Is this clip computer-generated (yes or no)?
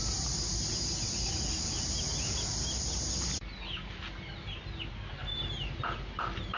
no